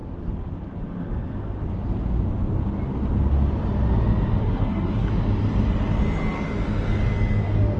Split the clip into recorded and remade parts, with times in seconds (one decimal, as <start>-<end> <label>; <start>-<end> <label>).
0.0-4.4 recorded; 4.4-5.1 remade; 5.1-7.8 recorded